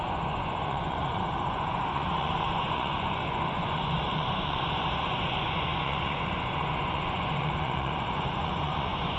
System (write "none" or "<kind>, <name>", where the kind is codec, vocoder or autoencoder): vocoder, Vocos